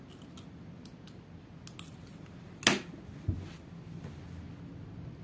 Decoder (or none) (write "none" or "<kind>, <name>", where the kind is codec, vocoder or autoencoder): none